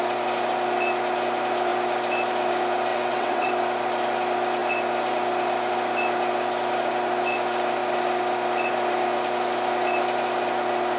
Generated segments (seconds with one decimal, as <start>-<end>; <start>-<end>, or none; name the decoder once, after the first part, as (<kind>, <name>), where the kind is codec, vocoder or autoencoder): 2.9-3.5 (vocoder, WaveNeXt)